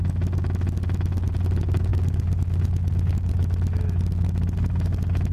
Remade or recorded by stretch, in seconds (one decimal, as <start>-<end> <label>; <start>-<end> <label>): 0.0-5.3 recorded